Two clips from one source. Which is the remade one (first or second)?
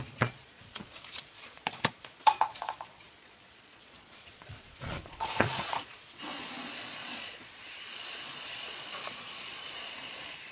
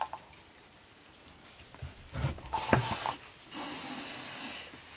first